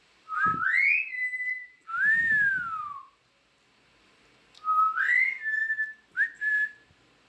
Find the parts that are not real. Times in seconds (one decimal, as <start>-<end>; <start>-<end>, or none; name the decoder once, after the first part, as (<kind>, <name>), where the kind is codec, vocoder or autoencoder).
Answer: 1.2-1.9 (vocoder, BigVGAN v2)